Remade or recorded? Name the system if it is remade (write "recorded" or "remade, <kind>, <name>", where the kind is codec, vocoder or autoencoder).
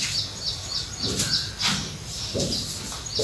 recorded